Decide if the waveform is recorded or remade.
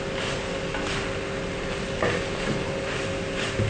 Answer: recorded